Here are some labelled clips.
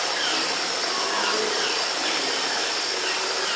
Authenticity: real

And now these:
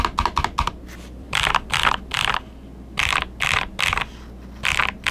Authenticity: real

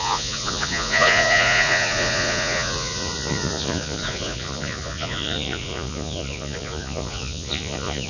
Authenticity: fake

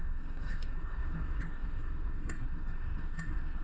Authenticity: fake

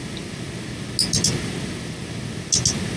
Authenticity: real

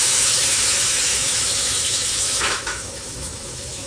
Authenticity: fake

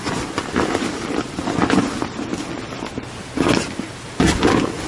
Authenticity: real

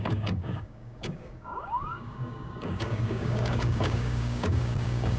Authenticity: fake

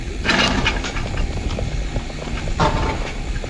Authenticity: real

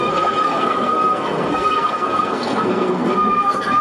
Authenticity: fake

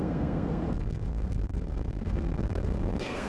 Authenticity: fake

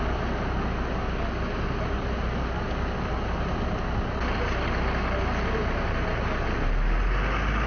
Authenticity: real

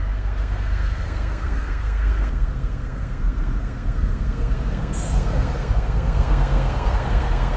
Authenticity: fake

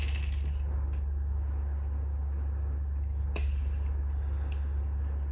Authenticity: real